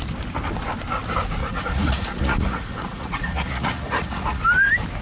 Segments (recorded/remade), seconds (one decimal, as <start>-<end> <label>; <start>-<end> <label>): 0.0-1.4 recorded; 1.4-4.4 remade; 4.4-5.0 recorded